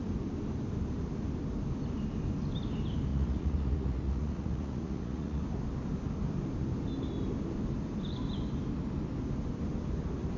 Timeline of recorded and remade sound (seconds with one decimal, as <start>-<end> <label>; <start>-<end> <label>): 0.0-3.1 recorded; 3.1-5.4 remade; 5.4-10.4 recorded